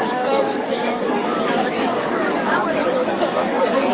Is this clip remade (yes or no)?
yes